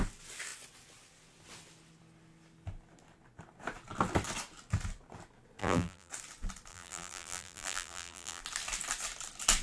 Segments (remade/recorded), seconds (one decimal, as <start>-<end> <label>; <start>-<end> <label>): 0.0-5.6 recorded; 5.6-6.1 remade; 6.1-6.7 recorded; 6.7-8.4 remade; 8.4-9.6 recorded